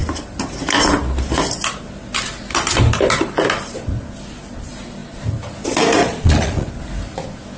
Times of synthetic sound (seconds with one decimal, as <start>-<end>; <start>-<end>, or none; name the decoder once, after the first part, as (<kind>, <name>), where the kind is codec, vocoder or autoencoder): 6.0-6.7 (vocoder, Vocos)